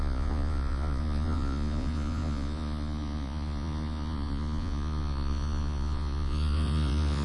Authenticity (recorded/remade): remade